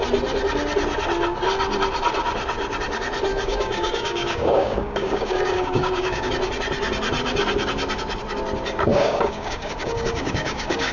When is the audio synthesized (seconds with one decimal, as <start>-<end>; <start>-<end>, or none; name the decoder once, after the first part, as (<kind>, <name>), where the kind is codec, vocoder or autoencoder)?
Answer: 3.3-6.3 (codec, DAC); 8.9-10.9